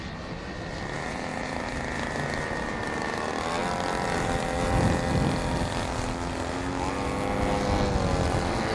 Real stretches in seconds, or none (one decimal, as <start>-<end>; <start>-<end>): 0.0-8.7